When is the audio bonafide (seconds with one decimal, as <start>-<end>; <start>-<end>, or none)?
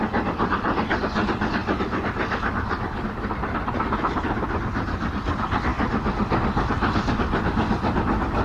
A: 0.0-8.4